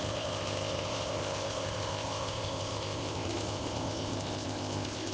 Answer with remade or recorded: remade